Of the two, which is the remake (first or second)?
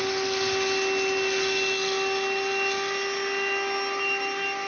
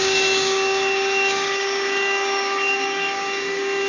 second